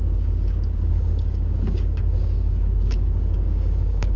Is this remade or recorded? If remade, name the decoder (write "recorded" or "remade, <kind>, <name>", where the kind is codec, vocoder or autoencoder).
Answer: remade, codec, DAC